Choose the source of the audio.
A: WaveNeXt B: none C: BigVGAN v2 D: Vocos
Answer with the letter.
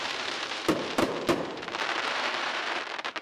C